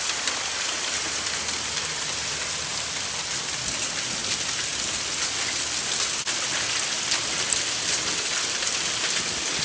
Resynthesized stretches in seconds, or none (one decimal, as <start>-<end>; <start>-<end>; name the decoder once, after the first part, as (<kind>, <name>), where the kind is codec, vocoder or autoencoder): none